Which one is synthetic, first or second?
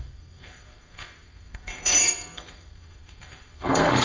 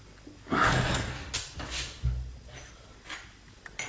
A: first